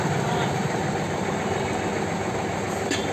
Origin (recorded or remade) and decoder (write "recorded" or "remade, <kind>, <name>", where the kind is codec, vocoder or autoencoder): recorded